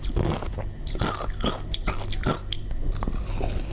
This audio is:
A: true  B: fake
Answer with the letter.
A